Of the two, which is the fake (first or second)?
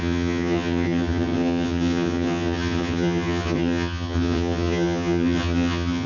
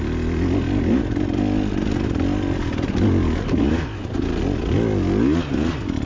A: first